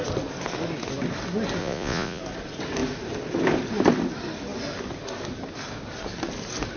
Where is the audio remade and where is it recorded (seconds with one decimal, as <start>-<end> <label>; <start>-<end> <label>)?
0.0-1.6 recorded; 1.6-2.2 remade; 2.2-6.8 recorded